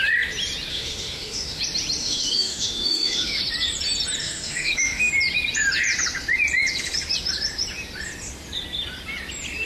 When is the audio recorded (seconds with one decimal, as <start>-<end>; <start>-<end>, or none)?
0.0-0.7; 1.6-2.0; 3.4-4.2; 5.1-9.7